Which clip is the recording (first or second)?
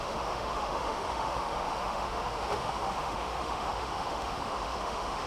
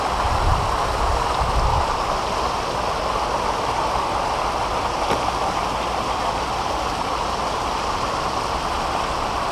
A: second